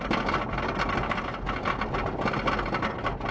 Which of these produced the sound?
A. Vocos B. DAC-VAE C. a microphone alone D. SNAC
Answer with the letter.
C